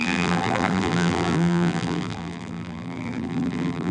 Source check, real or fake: fake